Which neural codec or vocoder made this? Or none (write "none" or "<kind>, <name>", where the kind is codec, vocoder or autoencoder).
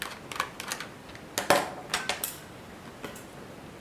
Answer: none